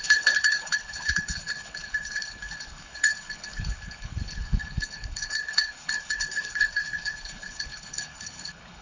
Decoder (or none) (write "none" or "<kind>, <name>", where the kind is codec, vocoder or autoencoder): codec, HILCodec